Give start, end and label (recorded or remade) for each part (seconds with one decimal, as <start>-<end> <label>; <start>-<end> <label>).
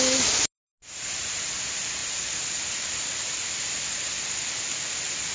0.0-2.0 recorded; 2.0-5.3 remade